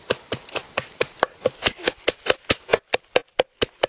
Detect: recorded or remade recorded